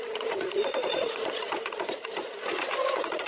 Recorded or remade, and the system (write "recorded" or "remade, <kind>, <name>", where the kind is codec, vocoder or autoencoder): remade, vocoder, Vocos